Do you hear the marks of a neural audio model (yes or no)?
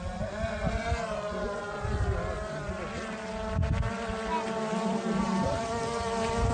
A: no